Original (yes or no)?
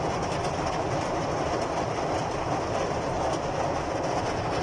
yes